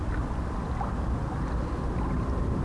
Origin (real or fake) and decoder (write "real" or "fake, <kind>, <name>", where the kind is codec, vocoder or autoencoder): real